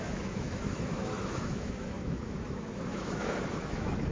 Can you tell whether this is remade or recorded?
remade